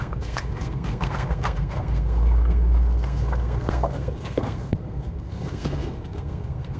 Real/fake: fake